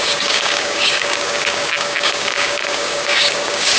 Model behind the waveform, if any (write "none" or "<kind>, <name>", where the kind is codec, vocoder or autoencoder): codec, DAC